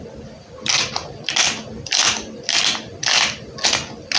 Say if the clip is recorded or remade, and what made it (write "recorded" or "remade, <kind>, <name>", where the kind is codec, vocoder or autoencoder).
recorded